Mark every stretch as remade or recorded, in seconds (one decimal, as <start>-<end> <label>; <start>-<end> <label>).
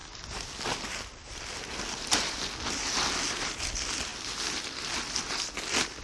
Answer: 0.0-6.0 recorded